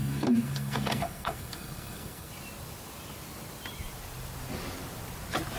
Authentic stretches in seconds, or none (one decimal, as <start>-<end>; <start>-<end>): 2.3-5.6